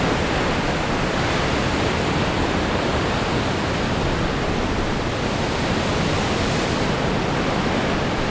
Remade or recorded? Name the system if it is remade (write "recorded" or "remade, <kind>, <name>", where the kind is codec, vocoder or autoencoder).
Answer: remade, vocoder, BigVGAN v2